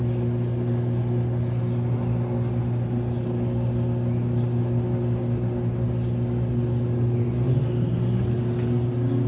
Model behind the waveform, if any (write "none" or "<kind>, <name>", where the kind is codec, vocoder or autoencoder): none